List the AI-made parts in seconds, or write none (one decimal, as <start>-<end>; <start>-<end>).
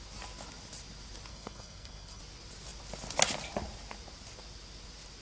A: 1.3-2.2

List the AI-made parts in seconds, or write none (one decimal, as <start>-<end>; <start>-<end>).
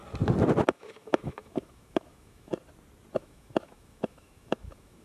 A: 0.7-2.5; 3.1-5.0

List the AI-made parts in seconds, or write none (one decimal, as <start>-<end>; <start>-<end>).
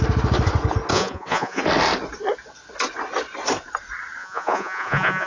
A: 0.9-1.6; 4.2-5.3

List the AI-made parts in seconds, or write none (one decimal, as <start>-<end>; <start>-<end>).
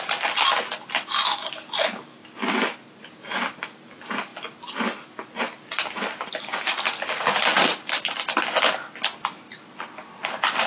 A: none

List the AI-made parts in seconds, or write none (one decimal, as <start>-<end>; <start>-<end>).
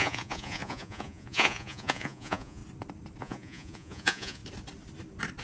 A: 0.0-2.6; 3.2-4.4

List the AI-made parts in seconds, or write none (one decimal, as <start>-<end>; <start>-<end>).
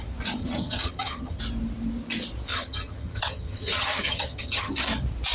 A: 0.4-1.4; 2.5-4.7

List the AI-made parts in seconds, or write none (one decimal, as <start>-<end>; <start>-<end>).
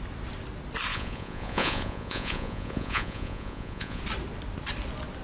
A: 0.9-4.0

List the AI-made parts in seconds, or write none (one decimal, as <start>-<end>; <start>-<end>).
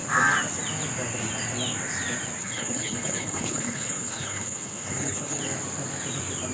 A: 2.4-5.4